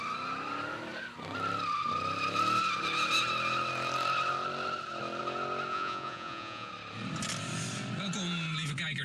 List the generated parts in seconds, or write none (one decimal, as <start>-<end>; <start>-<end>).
5.7-6.7